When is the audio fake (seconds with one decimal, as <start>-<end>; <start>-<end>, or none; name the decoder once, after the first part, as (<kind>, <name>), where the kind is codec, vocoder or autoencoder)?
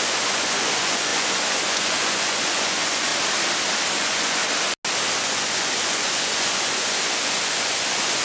0.0-3.1 (vocoder, Vocos); 4.0-4.4; 5.2-8.2